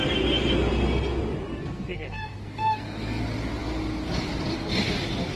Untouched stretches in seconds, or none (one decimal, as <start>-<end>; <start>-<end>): 0.0-1.5; 3.2-5.4